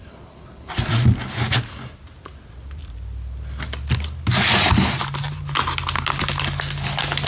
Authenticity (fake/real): real